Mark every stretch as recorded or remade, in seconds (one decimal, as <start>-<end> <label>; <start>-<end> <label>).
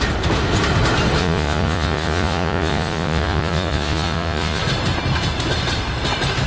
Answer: 0.0-1.2 recorded; 1.2-4.6 remade; 4.6-6.5 recorded